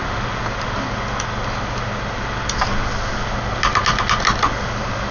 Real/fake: real